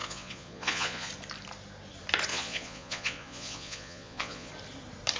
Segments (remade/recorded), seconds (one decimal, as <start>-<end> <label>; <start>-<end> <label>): 0.0-1.1 remade; 1.1-2.3 recorded; 2.3-4.5 remade; 4.5-5.2 recorded